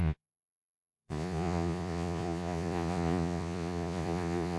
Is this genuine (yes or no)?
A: no